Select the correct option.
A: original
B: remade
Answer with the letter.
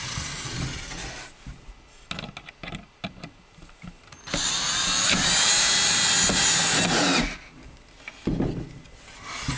A